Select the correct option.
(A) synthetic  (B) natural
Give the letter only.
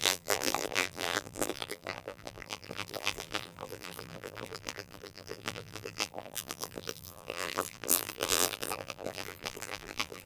A